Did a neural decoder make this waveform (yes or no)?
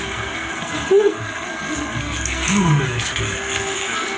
yes